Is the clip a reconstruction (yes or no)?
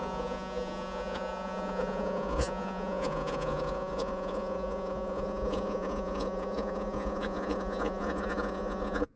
yes